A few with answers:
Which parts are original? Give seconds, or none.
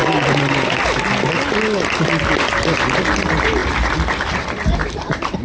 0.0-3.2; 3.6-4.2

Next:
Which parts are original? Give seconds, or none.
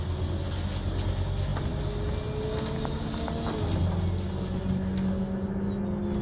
0.0-6.2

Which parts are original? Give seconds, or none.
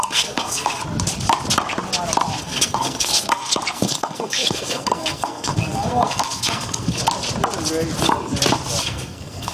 0.8-2.4; 7.0-8.8